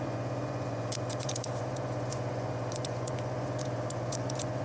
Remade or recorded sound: remade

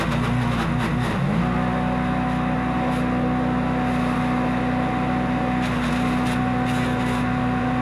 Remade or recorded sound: recorded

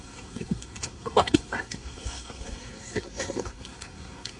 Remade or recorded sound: remade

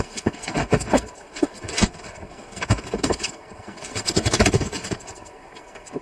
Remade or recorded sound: remade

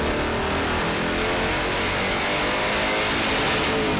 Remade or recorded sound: recorded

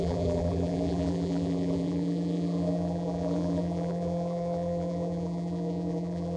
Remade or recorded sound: remade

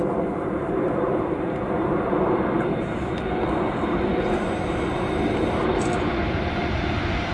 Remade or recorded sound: recorded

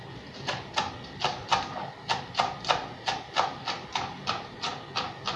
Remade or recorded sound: recorded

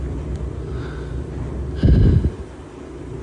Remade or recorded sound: recorded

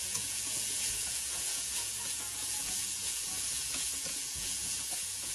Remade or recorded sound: remade